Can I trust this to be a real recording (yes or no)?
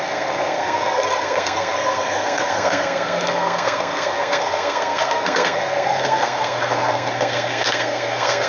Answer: no